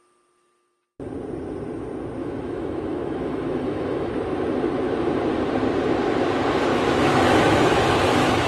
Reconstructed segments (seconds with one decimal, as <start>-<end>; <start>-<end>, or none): 2.2-4.1; 6.7-8.5